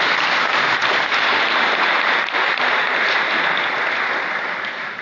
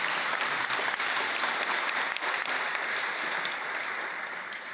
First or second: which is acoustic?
first